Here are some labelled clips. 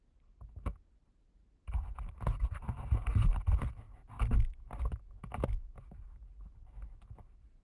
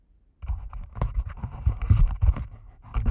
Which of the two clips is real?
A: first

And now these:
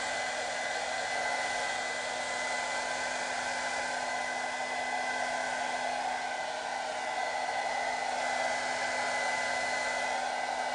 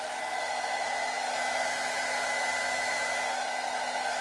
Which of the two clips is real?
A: first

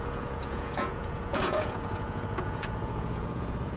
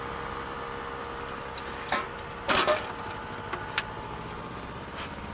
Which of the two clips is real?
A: second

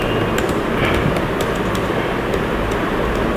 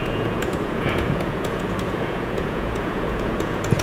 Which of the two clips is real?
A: first